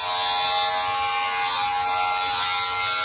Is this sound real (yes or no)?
yes